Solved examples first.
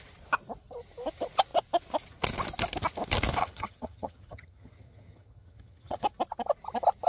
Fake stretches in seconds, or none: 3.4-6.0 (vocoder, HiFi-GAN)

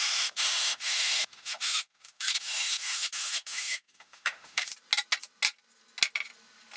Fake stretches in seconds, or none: 0.0-4.7 (autoencoder, DAC-VAE)